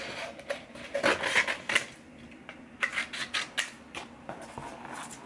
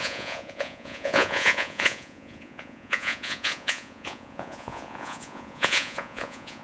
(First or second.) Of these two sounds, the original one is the first